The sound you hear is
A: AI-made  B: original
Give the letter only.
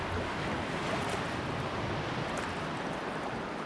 B